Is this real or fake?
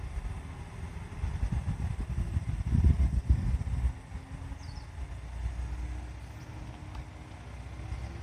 real